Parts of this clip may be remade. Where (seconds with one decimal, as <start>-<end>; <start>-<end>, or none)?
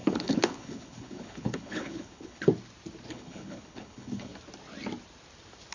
0.0-2.5; 3.1-4.3